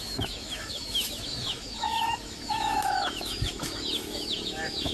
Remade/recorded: remade